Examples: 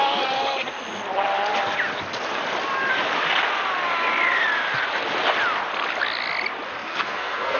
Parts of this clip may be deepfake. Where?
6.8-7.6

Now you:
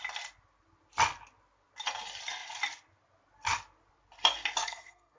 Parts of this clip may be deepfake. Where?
4.6-5.2

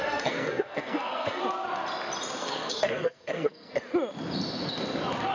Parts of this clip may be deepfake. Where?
0.0-1.4; 2.4-3.7